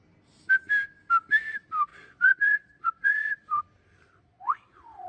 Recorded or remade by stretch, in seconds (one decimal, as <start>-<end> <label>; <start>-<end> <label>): 0.0-1.9 recorded; 1.9-3.6 remade; 3.6-4.2 recorded; 4.2-5.1 remade